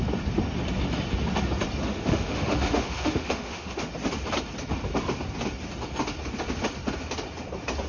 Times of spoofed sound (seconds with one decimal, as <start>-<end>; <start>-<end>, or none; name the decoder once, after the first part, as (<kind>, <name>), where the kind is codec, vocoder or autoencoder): 1.8-3.9 (autoencoder, DAC-VAE)